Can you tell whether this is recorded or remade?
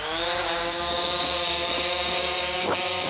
remade